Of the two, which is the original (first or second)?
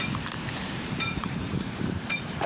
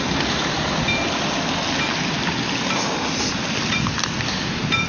second